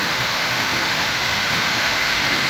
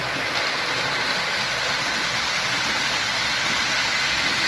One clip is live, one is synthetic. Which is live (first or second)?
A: second